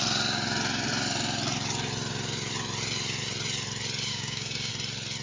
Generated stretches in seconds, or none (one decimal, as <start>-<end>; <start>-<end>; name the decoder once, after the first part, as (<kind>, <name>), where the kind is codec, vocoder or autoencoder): 4.1-4.7 (codec, DAC)